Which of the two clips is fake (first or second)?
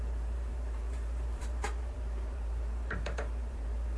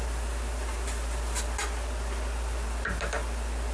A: first